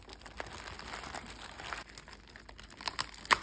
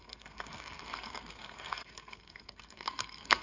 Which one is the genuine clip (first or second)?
first